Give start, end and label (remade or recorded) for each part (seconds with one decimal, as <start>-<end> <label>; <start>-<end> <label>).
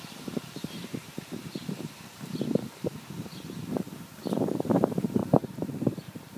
0.0-6.4 remade